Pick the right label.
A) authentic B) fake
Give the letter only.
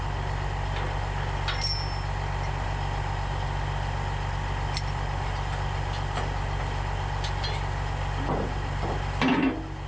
A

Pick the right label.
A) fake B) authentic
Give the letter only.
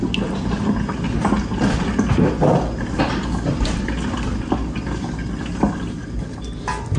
B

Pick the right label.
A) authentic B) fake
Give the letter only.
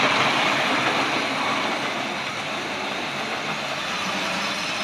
A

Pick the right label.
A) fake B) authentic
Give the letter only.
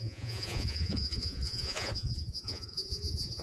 A